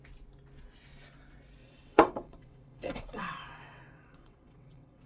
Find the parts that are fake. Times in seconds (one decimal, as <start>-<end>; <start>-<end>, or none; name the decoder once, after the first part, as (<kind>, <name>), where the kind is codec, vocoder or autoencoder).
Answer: 1.6-5.1 (vocoder, WaveNeXt)